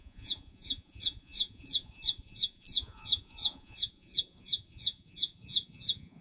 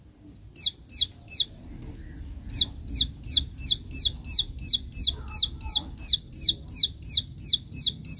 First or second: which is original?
second